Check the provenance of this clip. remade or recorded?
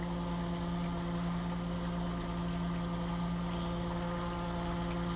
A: recorded